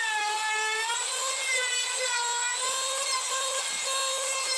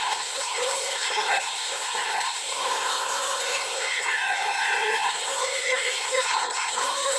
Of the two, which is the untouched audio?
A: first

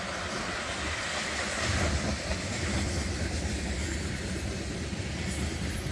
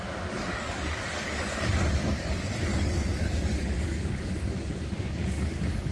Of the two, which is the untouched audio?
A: first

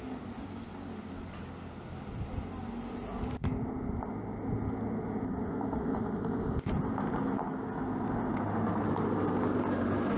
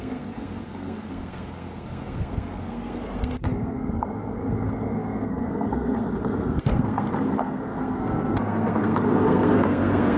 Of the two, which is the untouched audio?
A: first